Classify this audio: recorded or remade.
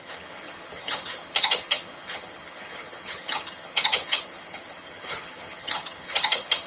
remade